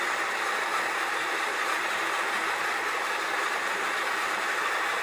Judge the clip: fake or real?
fake